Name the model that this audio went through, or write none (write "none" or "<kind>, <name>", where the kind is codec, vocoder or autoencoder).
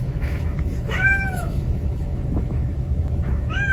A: autoencoder, DAC-VAE